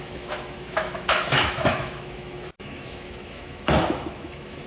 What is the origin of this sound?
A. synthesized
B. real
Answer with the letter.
A